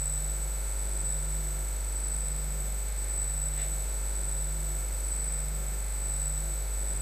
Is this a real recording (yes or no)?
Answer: no